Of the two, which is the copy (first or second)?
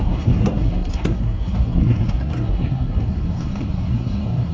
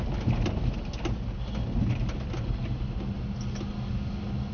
first